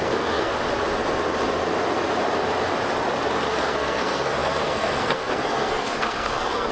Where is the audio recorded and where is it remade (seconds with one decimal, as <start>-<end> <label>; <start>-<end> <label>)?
0.0-0.5 remade; 0.5-3.5 recorded; 3.5-6.7 remade